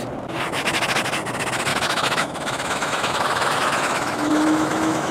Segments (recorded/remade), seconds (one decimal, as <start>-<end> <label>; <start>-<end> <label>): 0.0-1.7 recorded; 1.7-5.1 remade